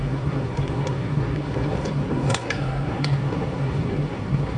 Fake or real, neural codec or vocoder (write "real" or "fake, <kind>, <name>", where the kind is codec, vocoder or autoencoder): fake, codec, SNAC